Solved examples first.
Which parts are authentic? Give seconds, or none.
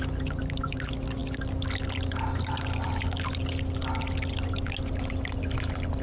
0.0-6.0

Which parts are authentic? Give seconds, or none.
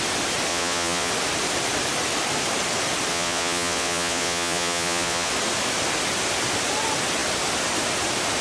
0.0-0.5; 1.1-3.1; 5.3-8.4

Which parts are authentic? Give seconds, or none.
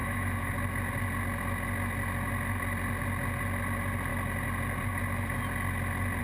0.5-6.2